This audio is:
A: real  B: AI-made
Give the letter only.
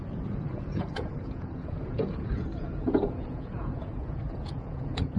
B